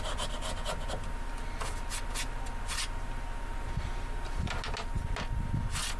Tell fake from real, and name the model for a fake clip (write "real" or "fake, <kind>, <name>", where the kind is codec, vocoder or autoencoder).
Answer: real